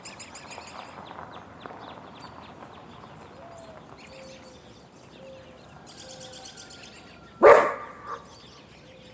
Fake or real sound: real